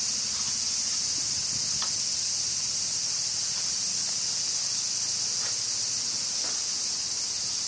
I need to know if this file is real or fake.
real